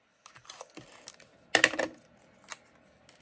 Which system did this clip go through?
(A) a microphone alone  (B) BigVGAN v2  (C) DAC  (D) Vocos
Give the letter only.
A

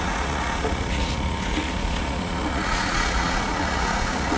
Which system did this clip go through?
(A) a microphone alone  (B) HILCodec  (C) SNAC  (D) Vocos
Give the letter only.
D